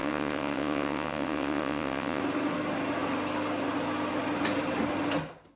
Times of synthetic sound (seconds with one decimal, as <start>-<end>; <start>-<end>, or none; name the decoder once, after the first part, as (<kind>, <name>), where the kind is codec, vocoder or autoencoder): 0.0-2.2 (vocoder, WaveNeXt)